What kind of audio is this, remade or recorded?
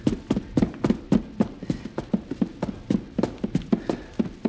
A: recorded